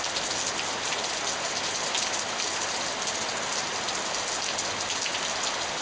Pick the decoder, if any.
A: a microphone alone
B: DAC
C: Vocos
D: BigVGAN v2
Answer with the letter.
A